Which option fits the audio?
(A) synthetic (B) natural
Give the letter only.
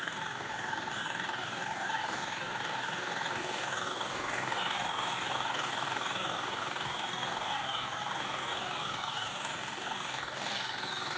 A